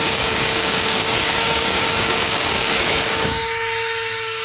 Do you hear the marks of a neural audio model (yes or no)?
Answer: yes